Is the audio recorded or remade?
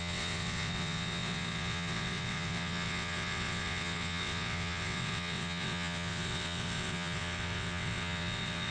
remade